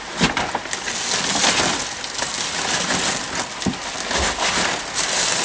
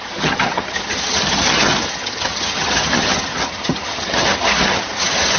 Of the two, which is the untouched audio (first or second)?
first